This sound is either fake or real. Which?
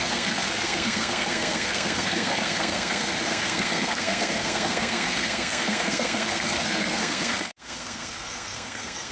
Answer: fake